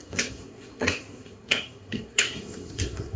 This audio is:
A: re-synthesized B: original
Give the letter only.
A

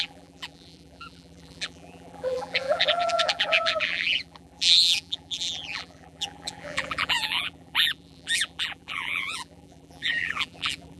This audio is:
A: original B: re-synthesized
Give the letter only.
B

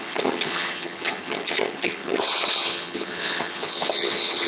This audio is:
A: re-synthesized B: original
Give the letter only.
A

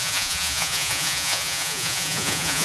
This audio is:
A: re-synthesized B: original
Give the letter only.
A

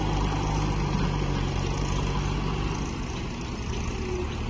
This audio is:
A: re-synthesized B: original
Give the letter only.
B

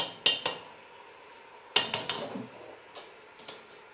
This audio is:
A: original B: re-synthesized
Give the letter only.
A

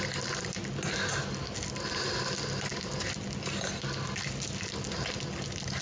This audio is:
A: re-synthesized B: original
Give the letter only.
B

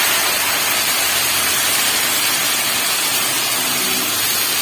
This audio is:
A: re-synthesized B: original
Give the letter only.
B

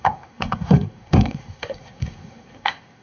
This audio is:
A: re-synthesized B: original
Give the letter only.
A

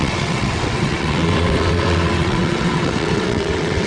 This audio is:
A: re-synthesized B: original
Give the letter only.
A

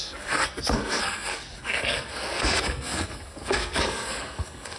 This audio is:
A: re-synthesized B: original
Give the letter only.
A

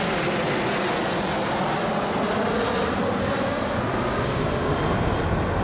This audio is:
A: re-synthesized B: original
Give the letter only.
B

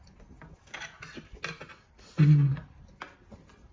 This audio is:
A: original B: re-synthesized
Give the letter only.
A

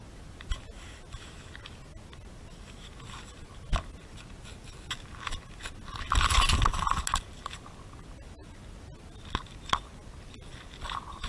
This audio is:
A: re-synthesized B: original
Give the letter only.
B